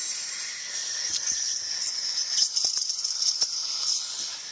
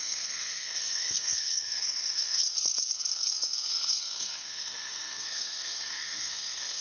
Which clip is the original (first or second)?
first